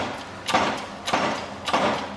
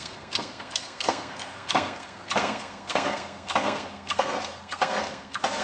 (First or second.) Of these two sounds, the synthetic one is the second